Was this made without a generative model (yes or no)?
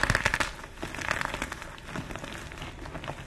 yes